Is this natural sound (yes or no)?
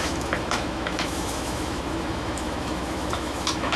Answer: no